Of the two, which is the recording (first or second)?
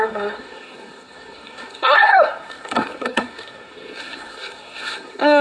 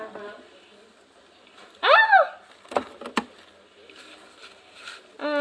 second